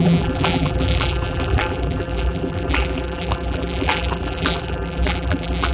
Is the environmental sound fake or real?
fake